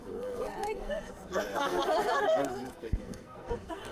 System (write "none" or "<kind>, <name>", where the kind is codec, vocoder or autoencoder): codec, SNAC